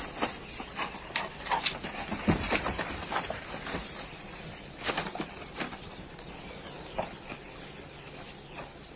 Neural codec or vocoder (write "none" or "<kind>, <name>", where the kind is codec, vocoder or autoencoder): none